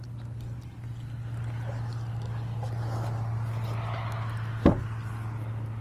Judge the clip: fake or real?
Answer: real